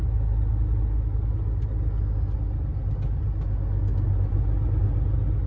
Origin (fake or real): real